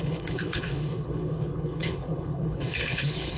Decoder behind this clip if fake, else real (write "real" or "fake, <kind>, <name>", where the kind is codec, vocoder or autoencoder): fake, codec, HILCodec